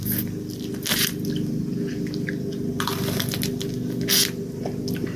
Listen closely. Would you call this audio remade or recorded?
recorded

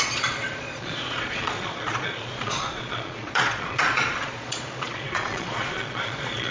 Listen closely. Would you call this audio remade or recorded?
remade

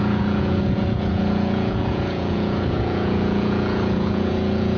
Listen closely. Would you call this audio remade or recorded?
remade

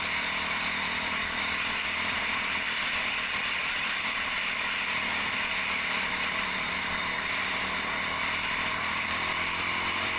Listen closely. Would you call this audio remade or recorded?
remade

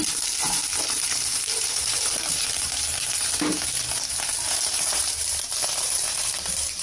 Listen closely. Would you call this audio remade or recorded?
remade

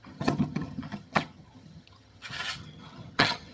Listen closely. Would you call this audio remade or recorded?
remade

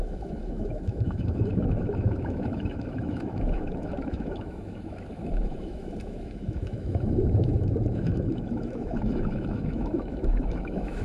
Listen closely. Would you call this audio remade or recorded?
remade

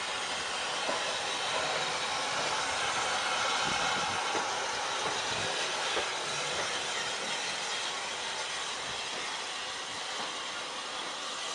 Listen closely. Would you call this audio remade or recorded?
recorded